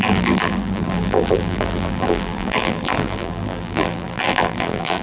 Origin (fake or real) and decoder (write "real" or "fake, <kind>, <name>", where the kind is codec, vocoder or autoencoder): fake, vocoder, BigVGAN v2